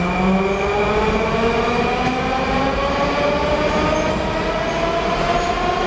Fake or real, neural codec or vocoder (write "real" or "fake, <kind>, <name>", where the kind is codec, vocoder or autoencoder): real